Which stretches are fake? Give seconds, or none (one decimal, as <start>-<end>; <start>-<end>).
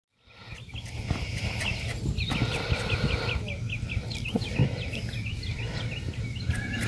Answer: 0.4-1.6